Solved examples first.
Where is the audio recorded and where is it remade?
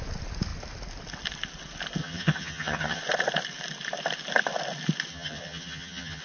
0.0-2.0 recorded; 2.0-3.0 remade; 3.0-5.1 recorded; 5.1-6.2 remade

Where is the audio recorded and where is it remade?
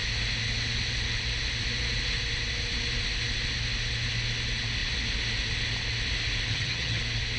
0.0-6.5 recorded; 6.5-7.0 remade; 7.0-7.4 recorded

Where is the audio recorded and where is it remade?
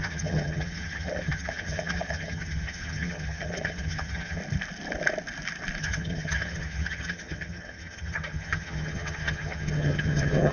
0.0-4.4 remade; 4.4-5.8 recorded; 5.8-10.5 remade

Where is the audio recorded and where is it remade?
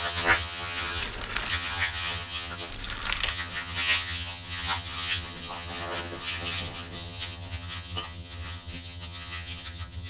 0.0-1.0 remade; 1.0-1.5 recorded; 1.5-2.7 remade; 2.7-3.3 recorded; 3.3-10.1 remade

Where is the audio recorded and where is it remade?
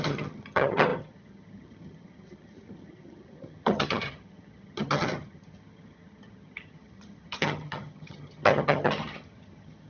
0.0-9.9 remade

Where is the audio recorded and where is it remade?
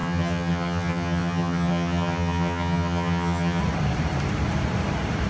0.0-3.6 remade; 3.6-5.3 recorded